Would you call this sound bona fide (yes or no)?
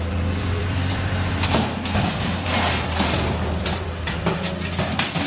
no